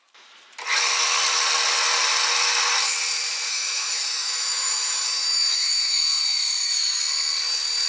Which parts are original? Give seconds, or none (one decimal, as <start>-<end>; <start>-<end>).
0.0-3.5; 7.0-7.9